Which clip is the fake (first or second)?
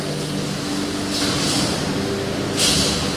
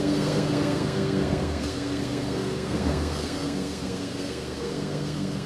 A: second